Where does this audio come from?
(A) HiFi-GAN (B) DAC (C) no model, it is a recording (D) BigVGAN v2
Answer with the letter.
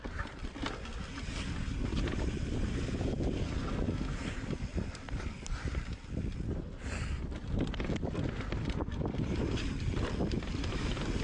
D